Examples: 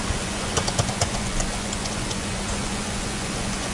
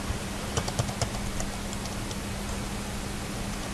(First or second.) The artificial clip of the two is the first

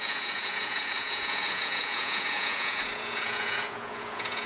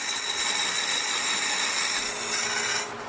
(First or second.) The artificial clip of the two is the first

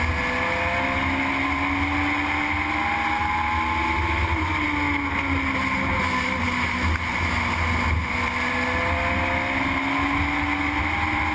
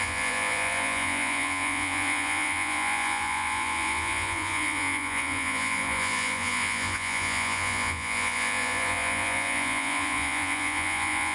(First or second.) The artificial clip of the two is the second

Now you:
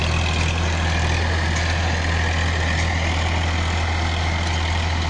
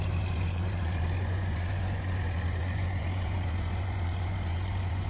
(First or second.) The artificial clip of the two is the second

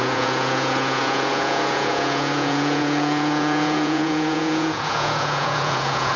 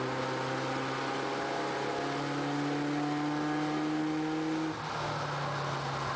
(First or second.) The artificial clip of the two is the first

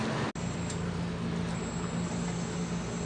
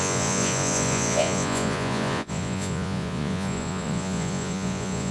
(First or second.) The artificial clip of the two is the second